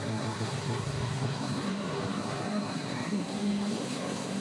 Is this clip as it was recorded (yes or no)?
no